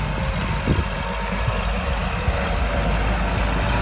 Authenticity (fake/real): real